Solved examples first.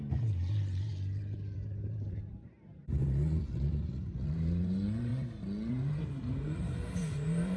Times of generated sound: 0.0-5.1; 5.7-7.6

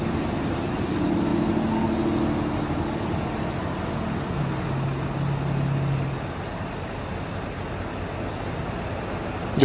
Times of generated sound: none